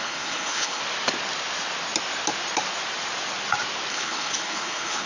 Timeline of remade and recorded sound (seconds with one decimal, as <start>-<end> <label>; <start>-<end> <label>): 0.0-0.8 remade; 0.8-3.9 recorded; 3.9-5.1 remade